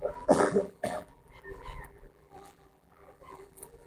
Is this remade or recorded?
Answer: remade